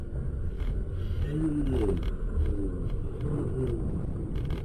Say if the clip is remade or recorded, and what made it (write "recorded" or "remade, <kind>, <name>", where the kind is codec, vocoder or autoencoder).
recorded